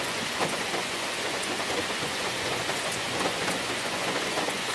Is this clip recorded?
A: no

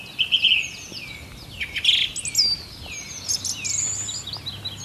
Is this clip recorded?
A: yes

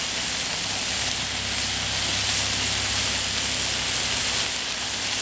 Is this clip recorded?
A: yes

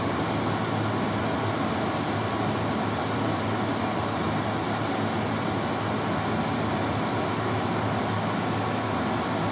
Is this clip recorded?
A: yes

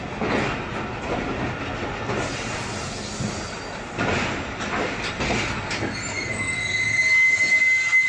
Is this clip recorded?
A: yes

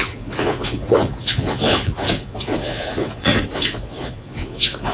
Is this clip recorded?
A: no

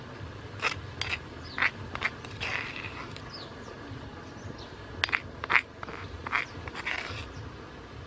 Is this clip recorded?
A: yes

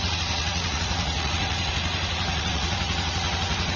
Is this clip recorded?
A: no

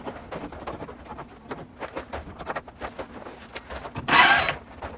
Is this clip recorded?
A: yes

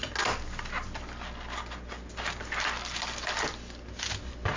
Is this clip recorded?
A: yes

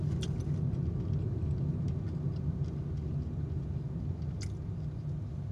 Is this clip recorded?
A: yes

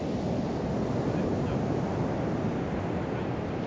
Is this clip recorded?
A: yes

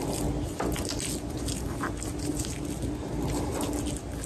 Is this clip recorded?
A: yes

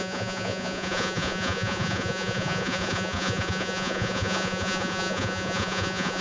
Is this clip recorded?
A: no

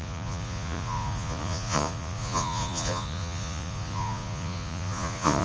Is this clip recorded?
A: no